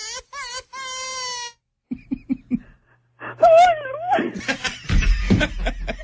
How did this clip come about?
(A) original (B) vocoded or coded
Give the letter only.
A